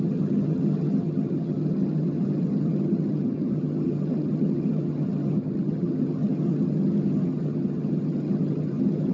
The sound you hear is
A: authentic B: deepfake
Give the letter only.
B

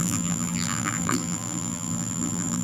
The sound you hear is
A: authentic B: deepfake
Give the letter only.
B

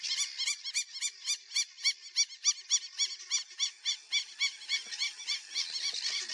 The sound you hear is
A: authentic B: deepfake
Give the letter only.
A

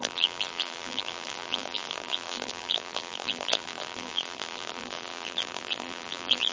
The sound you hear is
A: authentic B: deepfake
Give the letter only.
B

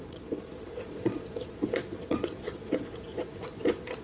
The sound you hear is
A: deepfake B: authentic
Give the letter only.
A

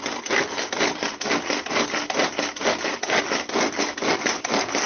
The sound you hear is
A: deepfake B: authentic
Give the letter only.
B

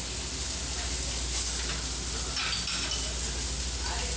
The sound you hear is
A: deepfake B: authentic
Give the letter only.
B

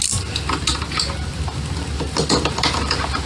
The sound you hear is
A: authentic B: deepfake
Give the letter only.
A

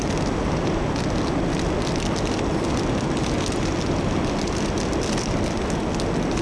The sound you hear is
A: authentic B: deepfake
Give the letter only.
A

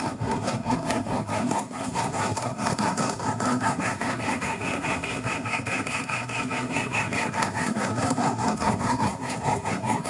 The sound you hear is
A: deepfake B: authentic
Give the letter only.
A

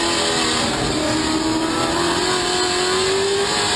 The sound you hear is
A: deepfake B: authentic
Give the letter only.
B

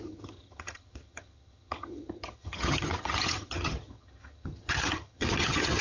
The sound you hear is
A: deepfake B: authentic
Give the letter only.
A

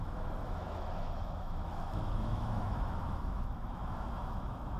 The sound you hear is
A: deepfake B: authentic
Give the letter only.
A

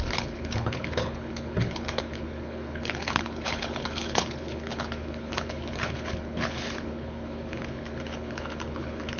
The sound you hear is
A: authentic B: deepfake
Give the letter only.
B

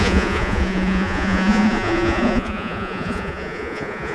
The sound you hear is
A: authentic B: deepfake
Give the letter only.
B